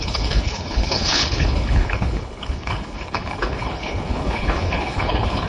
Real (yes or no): no